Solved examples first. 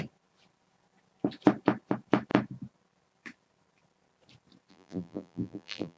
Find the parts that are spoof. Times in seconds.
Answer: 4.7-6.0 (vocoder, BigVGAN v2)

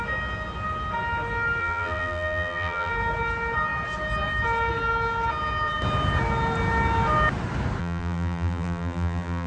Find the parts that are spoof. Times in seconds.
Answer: 1.6-2.9 (vocoder, BigVGAN v2); 7.8-9.5

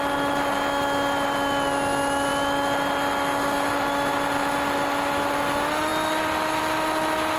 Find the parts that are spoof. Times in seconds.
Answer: none

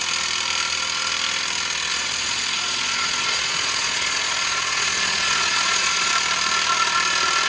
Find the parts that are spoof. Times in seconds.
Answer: 1.9-6.1 (vocoder, Vocos)

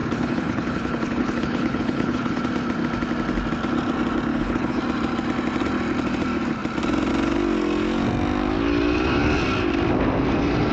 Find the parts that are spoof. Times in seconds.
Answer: 0.0-2.4 (codec, HILCodec); 4.3-4.8

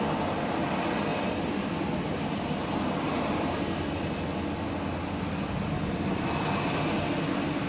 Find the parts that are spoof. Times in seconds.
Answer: none